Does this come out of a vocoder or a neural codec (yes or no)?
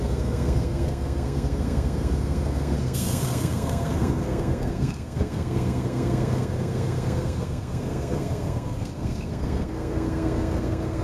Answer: yes